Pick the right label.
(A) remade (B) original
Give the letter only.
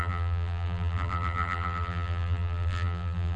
A